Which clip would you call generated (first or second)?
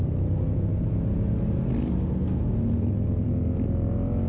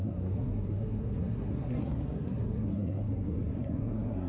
second